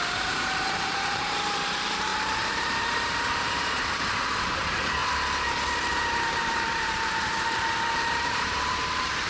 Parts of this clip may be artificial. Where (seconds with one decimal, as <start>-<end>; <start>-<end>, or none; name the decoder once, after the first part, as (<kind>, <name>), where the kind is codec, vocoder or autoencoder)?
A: 0.0-5.0 (vocoder, BigVGAN v2); 5.9-9.3